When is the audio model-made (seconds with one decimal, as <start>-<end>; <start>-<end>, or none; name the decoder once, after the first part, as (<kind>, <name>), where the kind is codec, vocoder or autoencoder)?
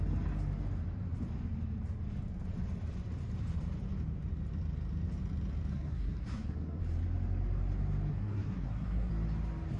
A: 5.7-6.8 (codec, SNAC); 8.1-9.1